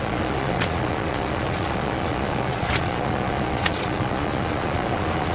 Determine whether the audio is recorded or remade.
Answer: remade